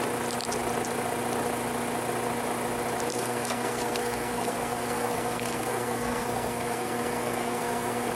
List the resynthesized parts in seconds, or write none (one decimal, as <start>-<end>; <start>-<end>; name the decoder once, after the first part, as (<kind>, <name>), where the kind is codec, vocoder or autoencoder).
3.1-8.1 (codec, SNAC)